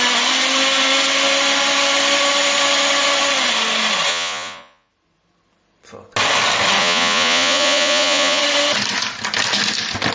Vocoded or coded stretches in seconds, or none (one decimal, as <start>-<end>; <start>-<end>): 4.1-4.9; 6.8-8.4